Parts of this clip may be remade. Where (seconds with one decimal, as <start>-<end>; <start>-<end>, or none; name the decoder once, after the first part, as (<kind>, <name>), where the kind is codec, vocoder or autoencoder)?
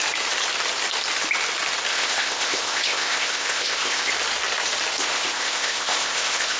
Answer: 1.9-4.1 (codec, ZipCodec); 5.0-6.6